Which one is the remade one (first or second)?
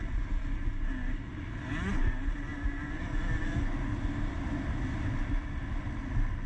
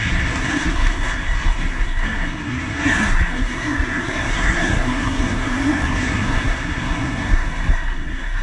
second